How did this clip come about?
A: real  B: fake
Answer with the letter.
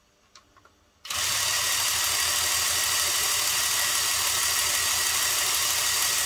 A